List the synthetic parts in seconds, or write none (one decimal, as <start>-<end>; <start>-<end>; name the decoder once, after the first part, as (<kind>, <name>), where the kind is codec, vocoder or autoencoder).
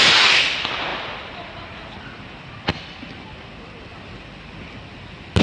none